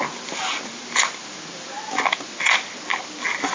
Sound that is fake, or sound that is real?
real